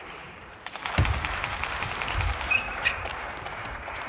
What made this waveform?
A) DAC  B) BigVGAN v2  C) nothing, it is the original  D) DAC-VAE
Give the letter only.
B